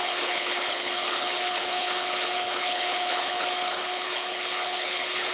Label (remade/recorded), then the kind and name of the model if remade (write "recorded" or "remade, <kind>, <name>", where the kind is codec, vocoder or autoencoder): remade, codec, HILCodec